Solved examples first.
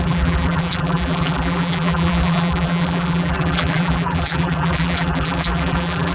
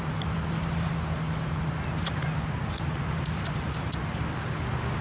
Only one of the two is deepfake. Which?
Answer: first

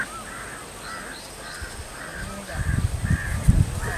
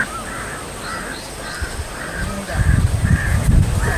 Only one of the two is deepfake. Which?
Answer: second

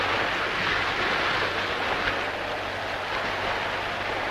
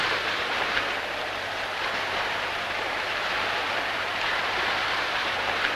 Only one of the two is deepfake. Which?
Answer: second